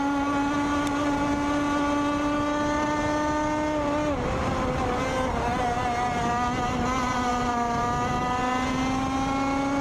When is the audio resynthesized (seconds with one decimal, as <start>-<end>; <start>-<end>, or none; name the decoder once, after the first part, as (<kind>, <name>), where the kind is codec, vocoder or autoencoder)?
7.3-7.8 (vocoder, BigVGAN v2)